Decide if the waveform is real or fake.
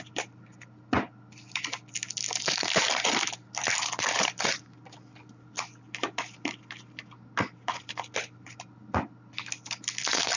real